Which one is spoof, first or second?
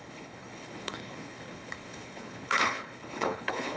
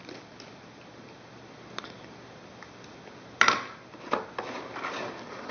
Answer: first